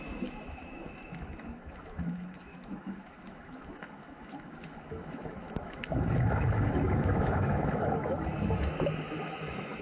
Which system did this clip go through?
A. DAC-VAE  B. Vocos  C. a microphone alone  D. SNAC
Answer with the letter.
A